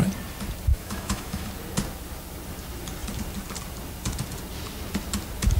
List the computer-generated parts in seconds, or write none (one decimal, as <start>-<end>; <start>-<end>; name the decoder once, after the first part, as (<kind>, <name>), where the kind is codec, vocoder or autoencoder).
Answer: 0.7-1.5 (autoencoder, DAC-VAE)